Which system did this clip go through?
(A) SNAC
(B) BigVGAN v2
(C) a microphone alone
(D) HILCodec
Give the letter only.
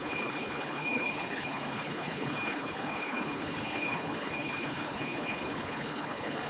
D